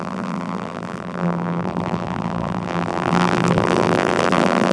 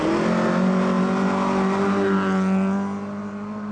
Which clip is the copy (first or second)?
first